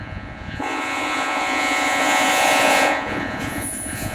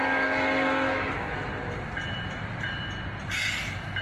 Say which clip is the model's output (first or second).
first